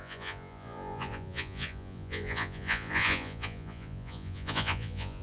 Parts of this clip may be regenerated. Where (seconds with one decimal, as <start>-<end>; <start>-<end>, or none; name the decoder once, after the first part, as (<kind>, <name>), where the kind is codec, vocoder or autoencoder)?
0.0-5.2 (vocoder, Vocos)